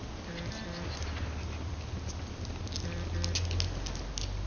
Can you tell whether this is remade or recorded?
recorded